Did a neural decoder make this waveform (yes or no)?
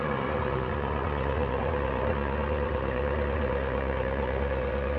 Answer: yes